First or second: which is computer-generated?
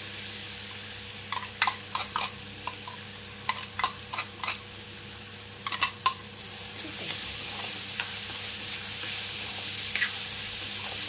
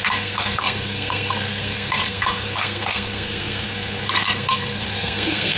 second